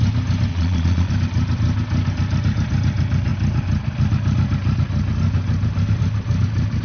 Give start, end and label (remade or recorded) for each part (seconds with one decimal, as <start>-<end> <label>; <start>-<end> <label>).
0.0-0.5 recorded; 0.5-1.1 remade; 1.1-6.8 recorded